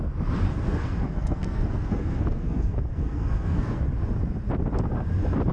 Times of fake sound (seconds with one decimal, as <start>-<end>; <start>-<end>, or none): 0.5-3.8